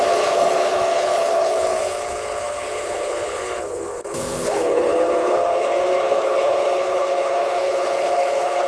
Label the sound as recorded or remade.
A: remade